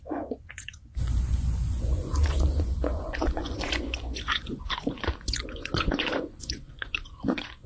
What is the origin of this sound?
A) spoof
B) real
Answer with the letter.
A